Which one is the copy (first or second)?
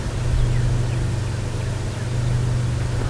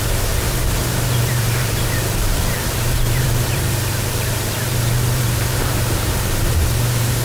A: second